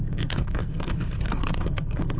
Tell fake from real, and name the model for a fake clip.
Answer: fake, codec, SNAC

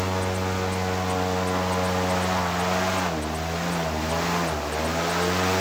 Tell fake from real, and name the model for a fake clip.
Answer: real